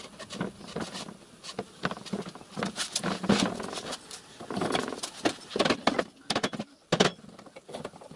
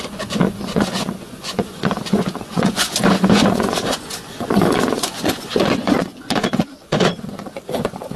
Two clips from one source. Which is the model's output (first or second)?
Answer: second